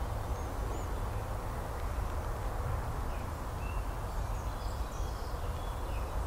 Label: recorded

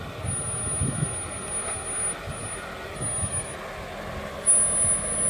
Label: recorded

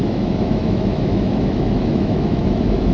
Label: remade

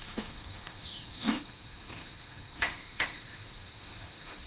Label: remade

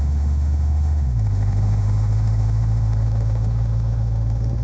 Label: remade